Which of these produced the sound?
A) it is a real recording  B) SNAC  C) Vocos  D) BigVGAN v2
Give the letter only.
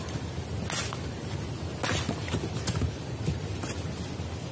A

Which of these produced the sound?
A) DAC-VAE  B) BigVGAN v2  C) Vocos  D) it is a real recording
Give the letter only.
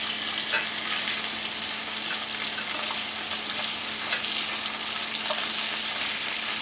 D